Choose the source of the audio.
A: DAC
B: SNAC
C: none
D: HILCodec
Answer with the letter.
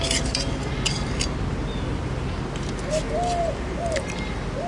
C